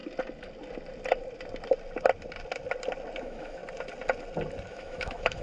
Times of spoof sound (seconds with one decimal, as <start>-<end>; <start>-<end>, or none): 3.2-3.6; 4.7-5.4